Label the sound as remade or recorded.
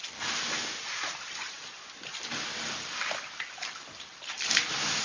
recorded